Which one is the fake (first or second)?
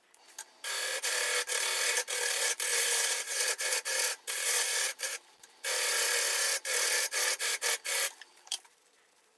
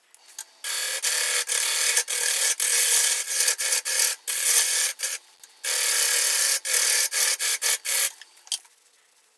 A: first